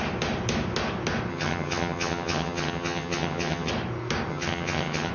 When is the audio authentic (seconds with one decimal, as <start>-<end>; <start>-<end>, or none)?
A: 0.0-1.3; 3.7-4.3